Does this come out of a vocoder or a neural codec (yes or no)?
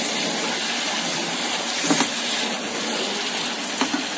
no